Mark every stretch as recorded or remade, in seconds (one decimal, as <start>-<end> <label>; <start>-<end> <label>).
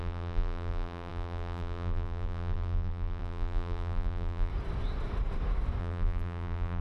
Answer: 0.0-4.5 remade; 4.5-5.8 recorded; 5.8-6.8 remade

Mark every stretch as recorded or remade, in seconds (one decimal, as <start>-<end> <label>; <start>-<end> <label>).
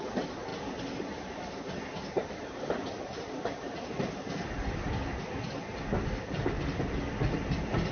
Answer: 0.0-7.9 recorded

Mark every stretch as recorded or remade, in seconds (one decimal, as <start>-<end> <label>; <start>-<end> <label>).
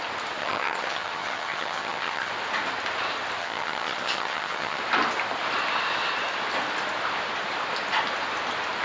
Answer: 0.0-0.4 recorded; 0.4-2.3 remade; 2.3-3.4 recorded; 3.4-4.8 remade; 4.8-8.8 recorded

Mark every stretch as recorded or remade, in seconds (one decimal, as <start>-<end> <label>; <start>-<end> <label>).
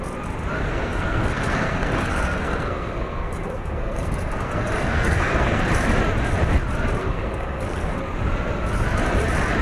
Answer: 0.0-0.6 recorded; 0.6-5.7 remade; 5.7-7.0 recorded; 7.0-8.0 remade; 8.0-9.6 recorded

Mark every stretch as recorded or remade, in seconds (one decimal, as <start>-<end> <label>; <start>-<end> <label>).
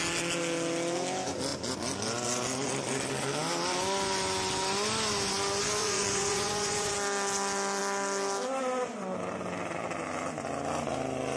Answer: 0.0-5.8 recorded; 5.8-6.9 remade; 6.9-11.4 recorded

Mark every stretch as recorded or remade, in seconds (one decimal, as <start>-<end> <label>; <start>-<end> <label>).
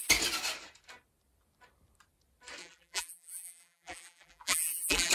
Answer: 0.0-2.6 recorded; 2.6-5.1 remade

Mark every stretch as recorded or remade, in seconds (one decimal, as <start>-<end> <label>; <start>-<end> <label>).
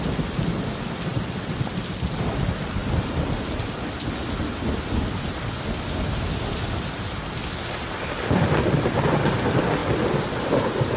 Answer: 0.0-11.0 recorded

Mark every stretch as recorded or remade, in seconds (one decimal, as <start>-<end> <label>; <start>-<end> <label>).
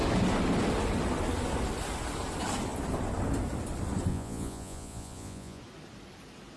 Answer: 0.0-4.1 recorded; 4.1-5.6 remade; 5.6-6.6 recorded